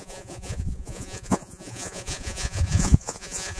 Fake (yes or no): yes